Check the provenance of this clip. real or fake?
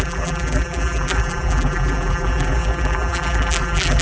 fake